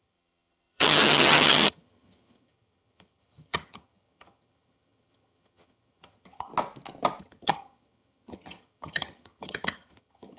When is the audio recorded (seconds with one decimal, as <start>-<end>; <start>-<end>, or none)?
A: 6.5-7.2